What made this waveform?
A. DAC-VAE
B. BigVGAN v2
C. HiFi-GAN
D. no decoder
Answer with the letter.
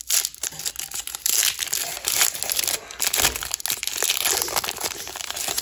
D